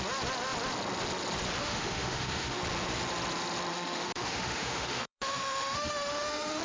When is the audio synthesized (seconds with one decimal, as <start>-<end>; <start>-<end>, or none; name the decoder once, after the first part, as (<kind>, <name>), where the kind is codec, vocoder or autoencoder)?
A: 1.6-2.6 (autoencoder, DAC-VAE); 3.7-6.6